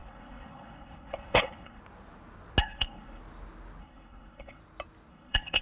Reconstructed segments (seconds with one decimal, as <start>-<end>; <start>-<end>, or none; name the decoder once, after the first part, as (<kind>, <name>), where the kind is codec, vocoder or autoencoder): 0.0-1.8 (codec, HILCodec); 2.6-3.2; 3.8-4.6; 5.1-5.6